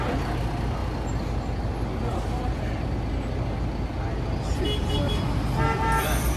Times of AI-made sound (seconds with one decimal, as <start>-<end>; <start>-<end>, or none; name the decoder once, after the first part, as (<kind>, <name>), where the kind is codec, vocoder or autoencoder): none